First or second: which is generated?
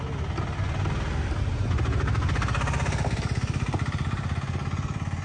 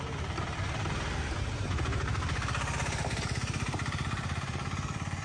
second